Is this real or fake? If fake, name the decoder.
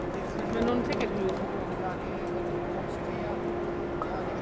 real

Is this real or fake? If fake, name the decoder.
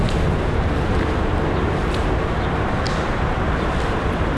fake, vocoder, BigVGAN v2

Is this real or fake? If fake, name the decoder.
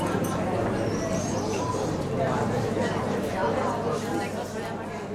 fake, vocoder, BigVGAN v2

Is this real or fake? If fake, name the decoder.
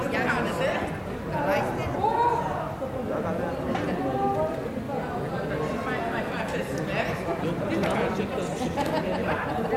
real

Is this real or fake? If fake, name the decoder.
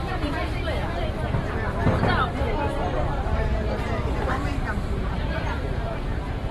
fake, vocoder, BigVGAN v2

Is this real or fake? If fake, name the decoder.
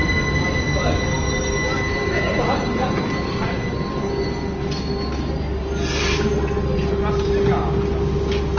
real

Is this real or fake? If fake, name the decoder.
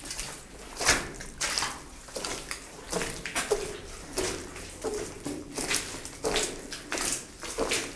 real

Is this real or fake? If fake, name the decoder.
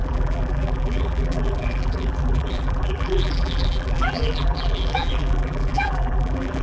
fake, vocoder, BigVGAN v2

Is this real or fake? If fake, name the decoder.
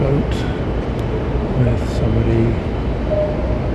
real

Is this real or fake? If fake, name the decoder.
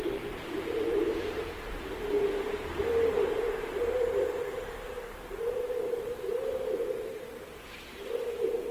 fake, vocoder, BigVGAN v2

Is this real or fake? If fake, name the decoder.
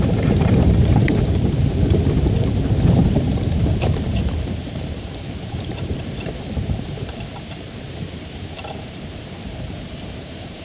fake, vocoder, BigVGAN v2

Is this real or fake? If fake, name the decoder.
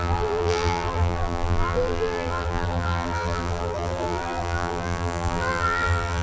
fake, vocoder, BigVGAN v2